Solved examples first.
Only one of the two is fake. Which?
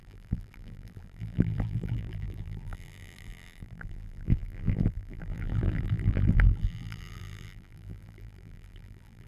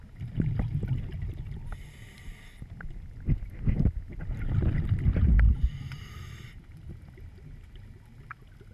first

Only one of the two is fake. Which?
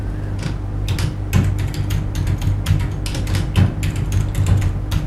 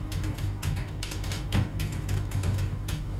second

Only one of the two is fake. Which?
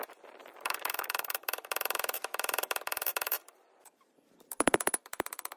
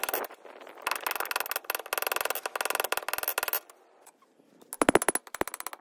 first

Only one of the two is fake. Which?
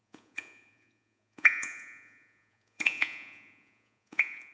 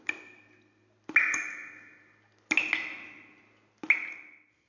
first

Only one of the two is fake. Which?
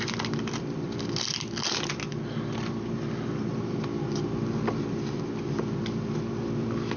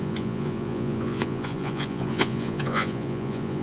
second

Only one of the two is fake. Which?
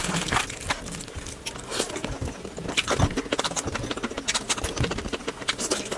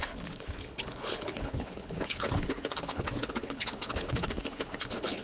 second